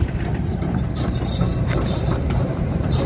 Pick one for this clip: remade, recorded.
remade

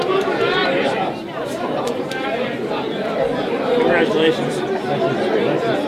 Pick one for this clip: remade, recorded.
remade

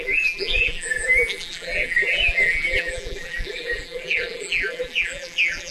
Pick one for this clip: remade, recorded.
remade